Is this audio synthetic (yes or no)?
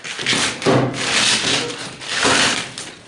no